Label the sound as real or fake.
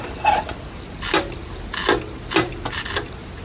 real